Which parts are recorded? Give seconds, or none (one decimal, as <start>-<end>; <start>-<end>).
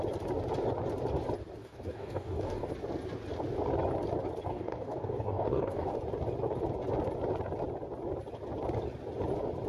0.0-1.6; 2.7-4.5; 6.0-9.7